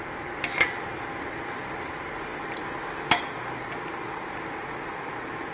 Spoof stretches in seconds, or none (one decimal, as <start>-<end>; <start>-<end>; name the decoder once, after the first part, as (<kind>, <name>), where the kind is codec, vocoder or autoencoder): none